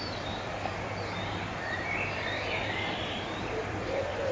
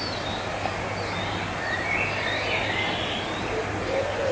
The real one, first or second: second